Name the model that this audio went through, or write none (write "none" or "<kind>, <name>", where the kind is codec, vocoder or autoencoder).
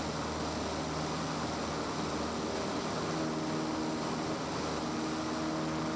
none